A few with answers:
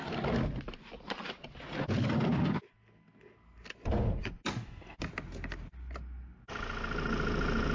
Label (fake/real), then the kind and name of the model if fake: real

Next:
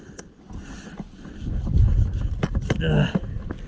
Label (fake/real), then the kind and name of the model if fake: real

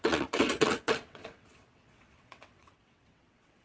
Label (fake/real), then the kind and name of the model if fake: fake, vocoder, WaveNeXt